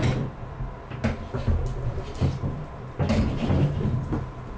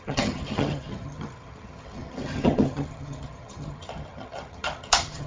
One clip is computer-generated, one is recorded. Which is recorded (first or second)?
first